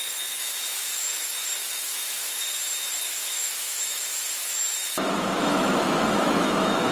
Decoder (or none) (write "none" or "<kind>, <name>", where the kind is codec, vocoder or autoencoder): autoencoder, DAC-VAE